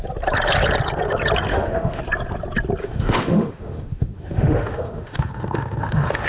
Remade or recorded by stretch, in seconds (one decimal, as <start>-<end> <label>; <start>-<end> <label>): 0.0-1.5 recorded; 1.5-2.0 remade; 2.0-2.8 recorded; 2.8-6.3 remade